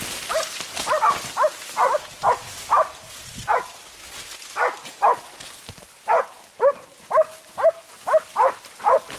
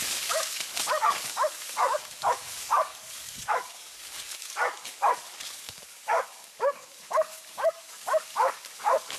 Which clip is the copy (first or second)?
second